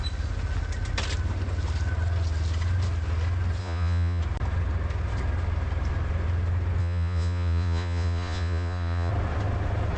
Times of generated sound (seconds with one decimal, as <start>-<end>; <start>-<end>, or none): 3.6-4.2; 6.8-9.1